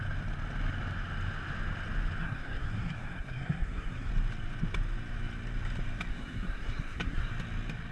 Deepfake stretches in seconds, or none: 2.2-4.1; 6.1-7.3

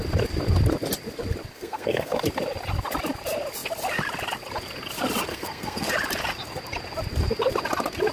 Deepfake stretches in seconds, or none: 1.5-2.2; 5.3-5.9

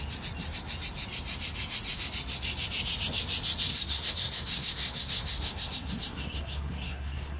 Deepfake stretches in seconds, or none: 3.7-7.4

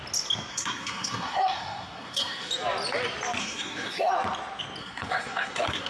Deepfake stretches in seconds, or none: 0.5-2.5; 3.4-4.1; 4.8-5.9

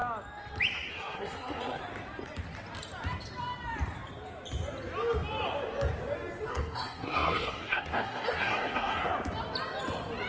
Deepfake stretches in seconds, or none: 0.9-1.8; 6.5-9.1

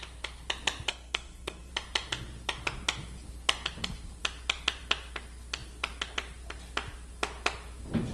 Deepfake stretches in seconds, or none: 0.9-1.7

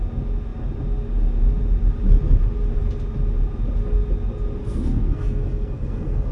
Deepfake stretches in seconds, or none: 4.6-6.3

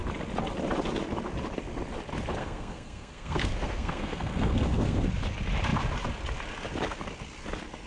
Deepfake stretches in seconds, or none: 2.4-5.1